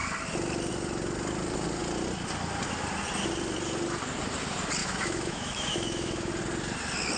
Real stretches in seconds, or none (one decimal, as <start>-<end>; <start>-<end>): 0.0-4.8; 6.3-7.2